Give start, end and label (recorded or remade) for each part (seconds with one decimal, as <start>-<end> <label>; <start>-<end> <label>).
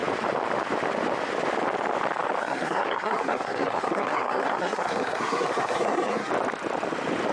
0.0-2.4 recorded; 2.4-6.3 remade; 6.3-7.3 recorded